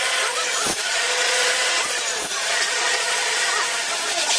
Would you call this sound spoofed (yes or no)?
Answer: yes